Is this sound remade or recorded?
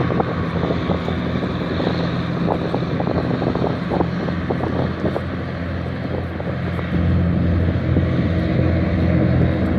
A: recorded